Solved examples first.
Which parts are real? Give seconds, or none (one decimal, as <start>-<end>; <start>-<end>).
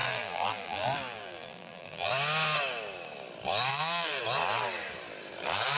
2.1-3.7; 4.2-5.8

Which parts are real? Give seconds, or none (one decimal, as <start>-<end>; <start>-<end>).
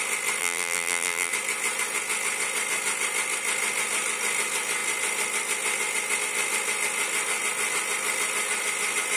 0.0-0.4; 1.3-9.2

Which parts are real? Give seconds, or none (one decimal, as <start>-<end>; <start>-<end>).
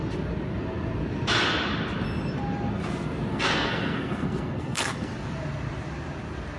0.0-3.3; 5.1-6.6